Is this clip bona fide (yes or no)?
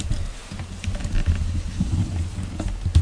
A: yes